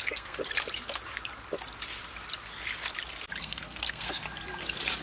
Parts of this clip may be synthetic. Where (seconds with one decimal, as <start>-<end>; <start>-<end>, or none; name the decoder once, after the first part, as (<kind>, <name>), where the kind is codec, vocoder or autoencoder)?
0.0-0.4 (codec, SNAC); 3.4-4.2